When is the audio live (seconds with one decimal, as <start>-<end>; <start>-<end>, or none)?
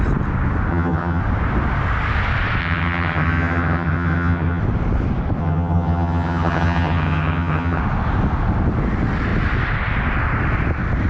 0.0-0.7; 1.2-2.6; 4.6-5.4; 7.8-11.1